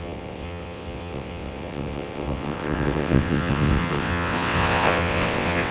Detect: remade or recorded remade